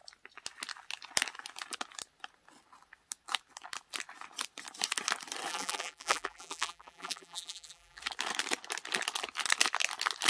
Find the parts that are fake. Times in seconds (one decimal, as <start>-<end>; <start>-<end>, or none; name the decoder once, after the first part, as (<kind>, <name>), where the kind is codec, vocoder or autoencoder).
5.5-8.0 (vocoder, BigVGAN v2)